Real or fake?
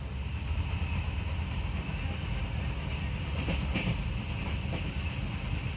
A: real